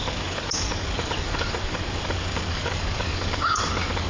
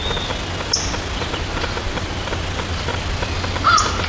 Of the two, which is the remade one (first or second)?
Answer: first